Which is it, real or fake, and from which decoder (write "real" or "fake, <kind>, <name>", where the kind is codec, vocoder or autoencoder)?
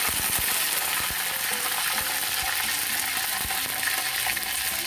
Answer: real